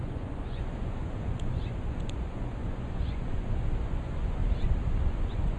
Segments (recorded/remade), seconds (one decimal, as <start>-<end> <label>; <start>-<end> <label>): 0.0-4.4 remade; 4.4-5.0 recorded; 5.0-5.6 remade